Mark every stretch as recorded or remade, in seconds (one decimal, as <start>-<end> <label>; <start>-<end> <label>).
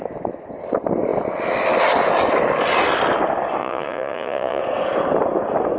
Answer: 0.0-3.6 recorded; 3.6-4.6 remade; 4.6-5.8 recorded